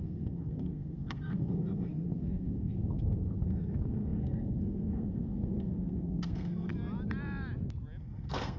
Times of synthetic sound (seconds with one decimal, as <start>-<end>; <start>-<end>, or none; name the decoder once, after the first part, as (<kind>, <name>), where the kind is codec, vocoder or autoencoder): 0.0-6.7 (codec, SNAC); 8.0-8.6